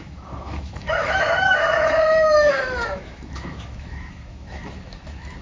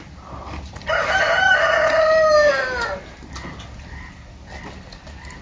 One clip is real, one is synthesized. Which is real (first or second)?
second